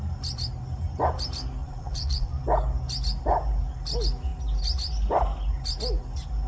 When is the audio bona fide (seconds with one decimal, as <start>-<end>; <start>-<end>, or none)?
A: 0.0-1.6; 2.4-6.5